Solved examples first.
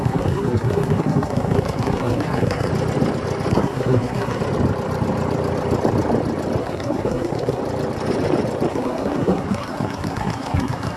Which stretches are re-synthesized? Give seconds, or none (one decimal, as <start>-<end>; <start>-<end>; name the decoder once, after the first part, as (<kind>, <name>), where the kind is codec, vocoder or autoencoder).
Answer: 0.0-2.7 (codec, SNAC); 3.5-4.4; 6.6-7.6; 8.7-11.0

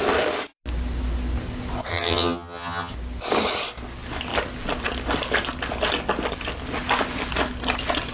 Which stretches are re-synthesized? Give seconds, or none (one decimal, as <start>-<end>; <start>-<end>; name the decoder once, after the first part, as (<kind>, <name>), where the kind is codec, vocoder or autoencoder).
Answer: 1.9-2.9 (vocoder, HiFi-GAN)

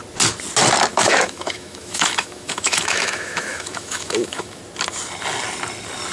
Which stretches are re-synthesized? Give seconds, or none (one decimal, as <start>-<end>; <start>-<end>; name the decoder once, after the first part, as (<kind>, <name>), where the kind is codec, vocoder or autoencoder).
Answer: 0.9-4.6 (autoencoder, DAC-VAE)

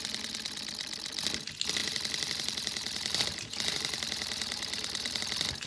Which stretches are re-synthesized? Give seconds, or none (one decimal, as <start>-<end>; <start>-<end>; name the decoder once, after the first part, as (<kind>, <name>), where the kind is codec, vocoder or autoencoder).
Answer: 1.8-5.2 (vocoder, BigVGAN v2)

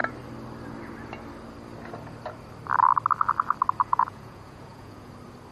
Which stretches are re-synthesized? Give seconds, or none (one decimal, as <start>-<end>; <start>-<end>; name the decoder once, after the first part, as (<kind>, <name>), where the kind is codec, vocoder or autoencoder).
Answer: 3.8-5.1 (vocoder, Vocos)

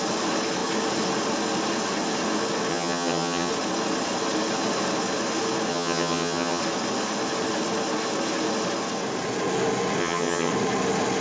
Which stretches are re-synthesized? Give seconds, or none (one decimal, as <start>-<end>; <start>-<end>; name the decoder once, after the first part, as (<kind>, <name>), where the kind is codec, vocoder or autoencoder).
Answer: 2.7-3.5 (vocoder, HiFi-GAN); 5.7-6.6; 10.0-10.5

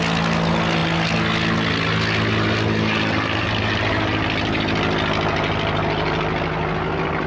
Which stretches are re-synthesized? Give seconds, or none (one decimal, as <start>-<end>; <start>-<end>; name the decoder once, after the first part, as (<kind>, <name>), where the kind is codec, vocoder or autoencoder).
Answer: none